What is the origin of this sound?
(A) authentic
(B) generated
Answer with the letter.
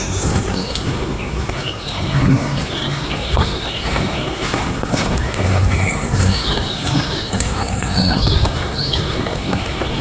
B